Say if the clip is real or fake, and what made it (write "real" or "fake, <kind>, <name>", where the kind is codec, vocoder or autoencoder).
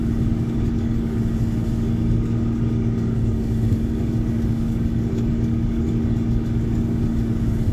fake, codec, DAC